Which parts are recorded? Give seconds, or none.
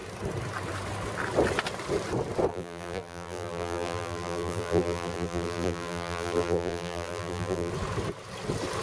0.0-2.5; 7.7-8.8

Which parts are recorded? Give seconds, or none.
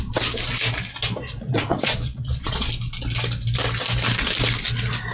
0.0-1.2; 2.7-5.1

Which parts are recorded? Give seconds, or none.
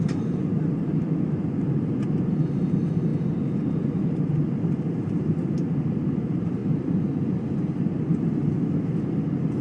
3.1-3.7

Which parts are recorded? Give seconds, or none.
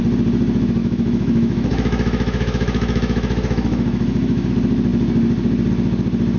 0.0-0.8; 4.5-6.4